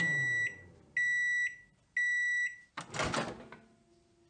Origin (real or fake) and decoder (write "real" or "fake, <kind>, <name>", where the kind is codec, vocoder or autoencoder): real